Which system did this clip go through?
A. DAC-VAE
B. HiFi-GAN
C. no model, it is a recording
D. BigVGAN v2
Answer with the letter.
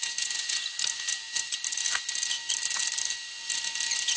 C